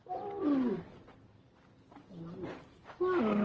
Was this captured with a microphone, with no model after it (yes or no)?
yes